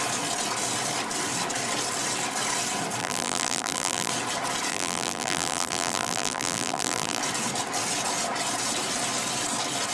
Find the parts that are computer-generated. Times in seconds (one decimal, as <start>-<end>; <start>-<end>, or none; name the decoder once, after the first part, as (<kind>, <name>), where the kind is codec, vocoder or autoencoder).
3.0-4.1 (vocoder, BigVGAN v2); 4.7-7.2